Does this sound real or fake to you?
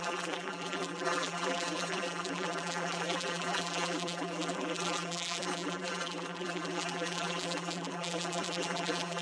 fake